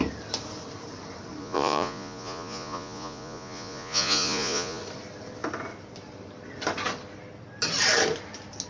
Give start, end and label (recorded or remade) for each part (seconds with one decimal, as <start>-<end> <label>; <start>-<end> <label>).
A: 0.0-1.4 recorded; 1.4-4.8 remade; 4.8-8.7 recorded